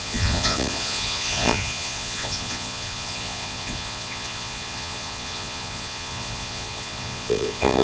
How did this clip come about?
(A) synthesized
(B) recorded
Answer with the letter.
A